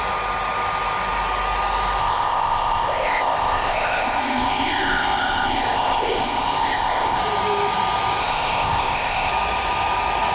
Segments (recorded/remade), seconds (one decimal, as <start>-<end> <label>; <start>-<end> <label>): 0.0-2.0 recorded; 2.0-7.2 remade; 7.2-8.2 recorded; 8.2-9.3 remade; 9.3-10.3 recorded